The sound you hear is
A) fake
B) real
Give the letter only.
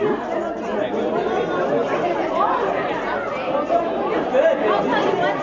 B